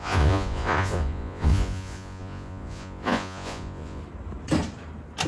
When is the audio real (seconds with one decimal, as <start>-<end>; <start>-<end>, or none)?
4.0-5.3